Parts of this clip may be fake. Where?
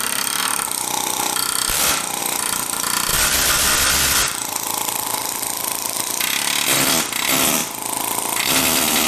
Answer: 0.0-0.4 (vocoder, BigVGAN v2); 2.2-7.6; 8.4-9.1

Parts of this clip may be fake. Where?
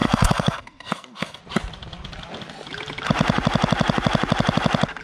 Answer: 0.0-1.4 (codec, SNAC)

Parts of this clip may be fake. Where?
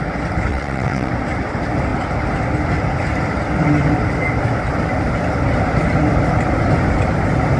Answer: 0.5-1.1 (vocoder, WaveNeXt)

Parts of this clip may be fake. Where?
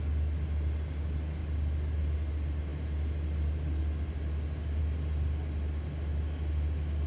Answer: none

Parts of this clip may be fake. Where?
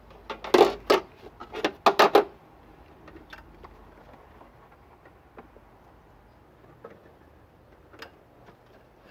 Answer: none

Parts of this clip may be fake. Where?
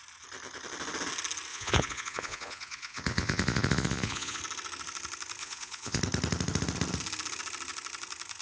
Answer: 1.5-4.4 (vocoder, Vocos); 5.4-6.0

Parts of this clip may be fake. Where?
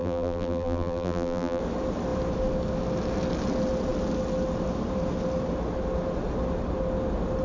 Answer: 0.0-1.6 (vocoder, BigVGAN v2)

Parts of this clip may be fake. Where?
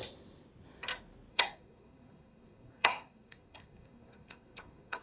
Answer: 1.3-5.0 (codec, SNAC)